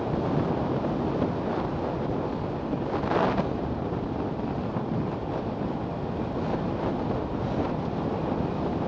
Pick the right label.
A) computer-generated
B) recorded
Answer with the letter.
B